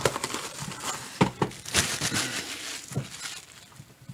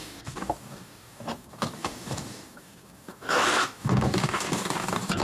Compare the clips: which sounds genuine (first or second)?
first